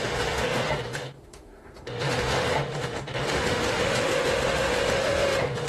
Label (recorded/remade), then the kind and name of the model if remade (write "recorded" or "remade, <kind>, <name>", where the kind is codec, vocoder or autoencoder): remade, autoencoder, DAC-VAE